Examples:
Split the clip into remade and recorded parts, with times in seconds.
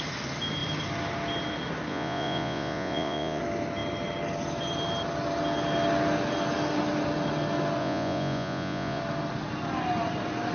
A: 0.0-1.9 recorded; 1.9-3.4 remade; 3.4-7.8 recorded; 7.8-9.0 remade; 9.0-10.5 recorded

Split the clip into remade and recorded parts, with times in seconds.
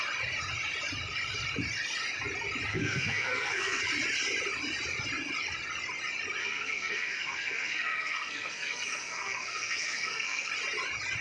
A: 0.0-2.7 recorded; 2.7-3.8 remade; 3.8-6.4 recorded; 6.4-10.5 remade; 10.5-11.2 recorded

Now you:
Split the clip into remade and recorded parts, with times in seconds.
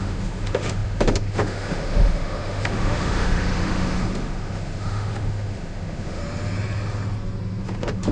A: 0.0-6.2 remade; 6.2-7.6 recorded; 7.6-8.1 remade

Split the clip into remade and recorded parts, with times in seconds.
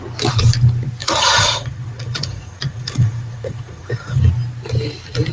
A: 0.0-1.0 recorded; 1.0-4.2 remade; 4.2-5.3 recorded